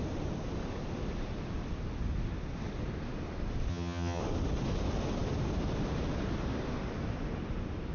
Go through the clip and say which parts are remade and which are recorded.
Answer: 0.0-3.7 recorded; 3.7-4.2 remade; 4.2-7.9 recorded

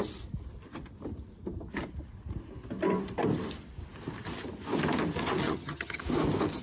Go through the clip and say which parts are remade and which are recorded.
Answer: 0.0-5.4 recorded; 5.4-6.0 remade; 6.0-6.6 recorded

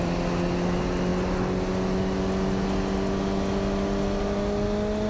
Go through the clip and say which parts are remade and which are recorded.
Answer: 0.0-5.1 recorded